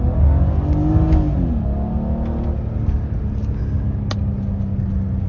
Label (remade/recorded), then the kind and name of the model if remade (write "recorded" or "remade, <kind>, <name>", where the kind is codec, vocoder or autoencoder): recorded